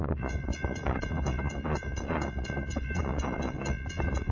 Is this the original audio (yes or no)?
no